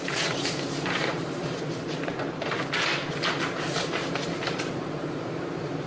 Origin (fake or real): fake